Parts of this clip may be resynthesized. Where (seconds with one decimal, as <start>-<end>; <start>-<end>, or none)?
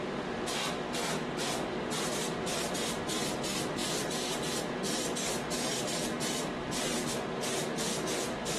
none